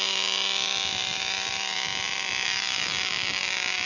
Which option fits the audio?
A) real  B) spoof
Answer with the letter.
A